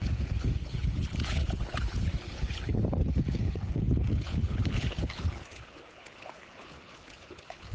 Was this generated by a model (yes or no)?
yes